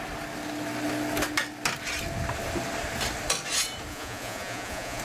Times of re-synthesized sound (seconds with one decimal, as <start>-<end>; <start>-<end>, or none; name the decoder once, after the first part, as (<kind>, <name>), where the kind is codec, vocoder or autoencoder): 3.9-5.0 (vocoder, Vocos)